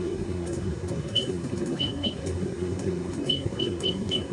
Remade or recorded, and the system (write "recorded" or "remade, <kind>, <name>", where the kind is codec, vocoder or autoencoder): remade, codec, SNAC